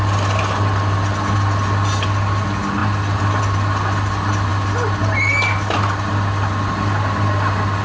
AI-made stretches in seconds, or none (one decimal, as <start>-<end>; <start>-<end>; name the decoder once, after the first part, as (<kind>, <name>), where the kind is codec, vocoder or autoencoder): none